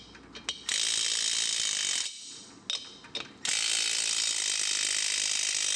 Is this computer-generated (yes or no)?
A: no